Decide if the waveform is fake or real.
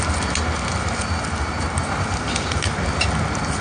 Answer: real